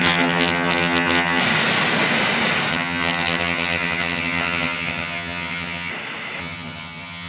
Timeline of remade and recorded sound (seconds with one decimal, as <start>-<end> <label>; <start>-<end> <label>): 0.0-1.4 remade; 1.4-2.7 recorded; 2.7-5.9 remade; 5.9-6.4 recorded; 6.4-7.3 remade